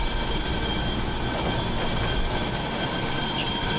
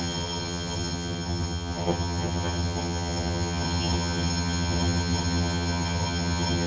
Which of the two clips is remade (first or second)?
second